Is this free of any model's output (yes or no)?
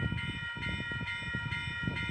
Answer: yes